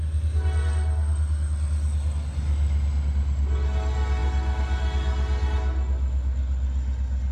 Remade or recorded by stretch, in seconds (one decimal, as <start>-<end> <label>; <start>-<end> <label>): 0.0-7.3 recorded